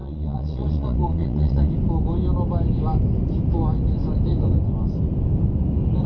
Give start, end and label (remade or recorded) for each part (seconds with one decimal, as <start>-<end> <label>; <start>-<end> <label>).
0.0-1.7 remade; 1.7-6.1 recorded